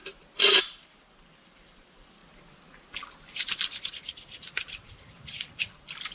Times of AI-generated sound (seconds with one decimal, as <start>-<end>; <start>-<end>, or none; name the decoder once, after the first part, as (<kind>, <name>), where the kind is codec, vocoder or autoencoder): 0.6-2.2 (vocoder, BigVGAN v2); 3.9-6.1